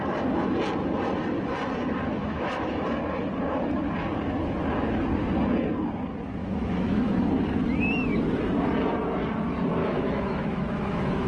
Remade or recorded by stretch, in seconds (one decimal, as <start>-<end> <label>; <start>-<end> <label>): 0.0-2.2 recorded; 2.2-2.8 remade; 2.8-6.4 recorded; 6.4-7.1 remade; 7.1-9.8 recorded; 9.8-11.3 remade

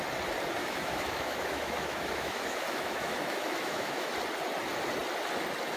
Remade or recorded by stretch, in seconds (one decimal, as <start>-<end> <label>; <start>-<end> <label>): 0.0-0.6 recorded; 0.6-4.1 remade; 4.1-5.8 recorded

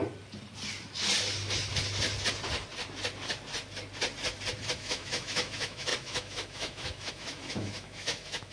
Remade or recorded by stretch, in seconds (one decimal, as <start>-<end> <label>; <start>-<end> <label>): 0.0-4.7 recorded; 4.7-8.5 remade

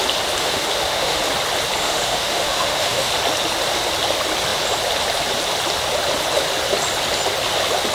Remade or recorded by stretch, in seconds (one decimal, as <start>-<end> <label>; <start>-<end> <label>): 0.0-0.4 recorded; 0.4-1.2 remade; 1.2-1.8 recorded; 1.8-3.1 remade; 3.1-7.9 recorded

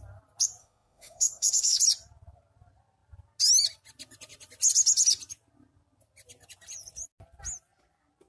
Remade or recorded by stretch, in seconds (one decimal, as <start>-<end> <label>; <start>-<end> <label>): 0.0-0.6 recorded; 0.6-1.8 remade; 1.8-8.3 recorded

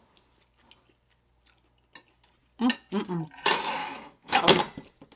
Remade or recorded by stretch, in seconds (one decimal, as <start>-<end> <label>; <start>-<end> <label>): 0.0-3.8 recorded; 3.8-4.4 remade; 4.4-5.2 recorded

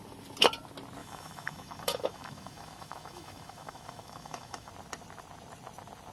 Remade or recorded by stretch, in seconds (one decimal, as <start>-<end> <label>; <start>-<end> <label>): 0.0-1.0 recorded; 1.0-4.7 remade; 4.7-6.1 recorded

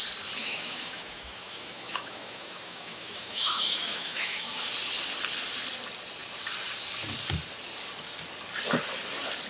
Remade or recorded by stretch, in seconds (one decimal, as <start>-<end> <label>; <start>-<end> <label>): 0.0-0.4 recorded; 0.4-4.6 remade; 4.6-9.5 recorded